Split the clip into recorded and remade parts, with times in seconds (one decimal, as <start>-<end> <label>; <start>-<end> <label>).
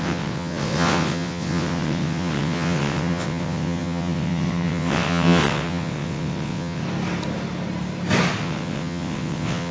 0.0-6.8 remade; 6.8-8.4 recorded; 8.4-9.7 remade